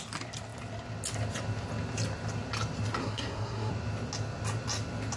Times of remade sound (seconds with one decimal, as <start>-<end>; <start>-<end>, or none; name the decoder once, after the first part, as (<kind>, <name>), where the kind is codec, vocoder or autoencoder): 3.0-3.7 (codec, SNAC)